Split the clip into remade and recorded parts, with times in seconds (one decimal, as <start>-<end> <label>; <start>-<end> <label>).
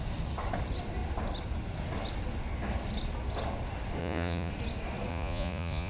0.0-4.0 recorded; 4.0-4.5 remade; 4.5-5.1 recorded; 5.1-5.9 remade